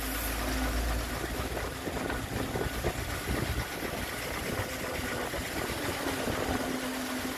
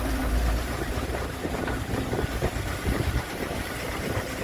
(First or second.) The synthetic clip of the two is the second